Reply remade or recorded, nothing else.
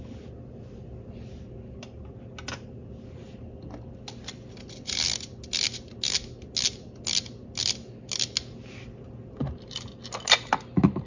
recorded